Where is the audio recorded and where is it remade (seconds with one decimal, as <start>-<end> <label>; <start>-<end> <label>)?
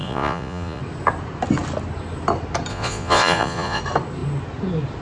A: 0.0-0.8 remade; 0.8-2.7 recorded; 2.7-3.8 remade; 3.8-5.0 recorded